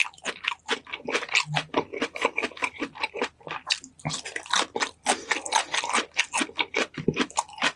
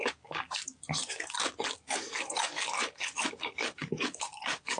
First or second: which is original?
first